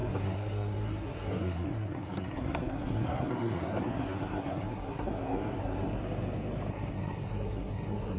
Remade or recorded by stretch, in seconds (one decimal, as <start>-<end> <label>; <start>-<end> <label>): 0.0-6.0 remade; 6.0-6.7 recorded; 6.7-8.2 remade